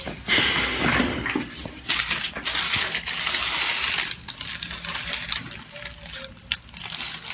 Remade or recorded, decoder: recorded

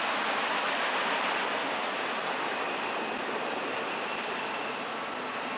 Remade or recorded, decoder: recorded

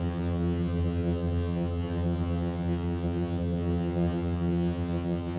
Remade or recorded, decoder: remade, vocoder, HiFi-GAN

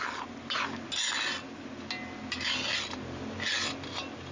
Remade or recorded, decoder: recorded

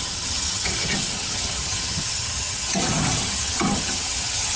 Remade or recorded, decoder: remade, vocoder, HiFi-GAN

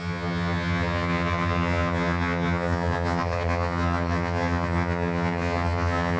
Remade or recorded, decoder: remade, vocoder, HiFi-GAN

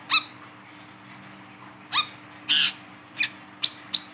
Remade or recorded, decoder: recorded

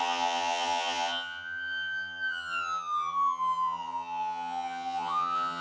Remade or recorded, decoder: remade, vocoder, HiFi-GAN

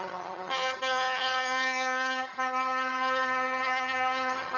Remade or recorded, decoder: remade, vocoder, HiFi-GAN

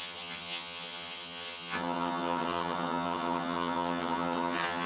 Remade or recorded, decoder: remade, vocoder, HiFi-GAN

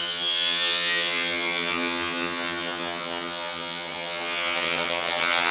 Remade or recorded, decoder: remade, vocoder, HiFi-GAN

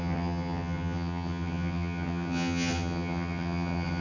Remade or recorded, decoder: remade, vocoder, HiFi-GAN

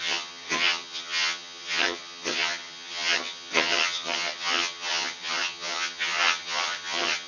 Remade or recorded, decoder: remade, vocoder, HiFi-GAN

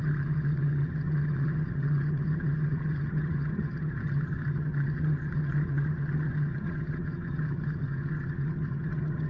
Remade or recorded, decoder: remade, vocoder, HiFi-GAN